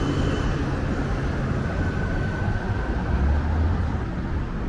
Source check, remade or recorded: recorded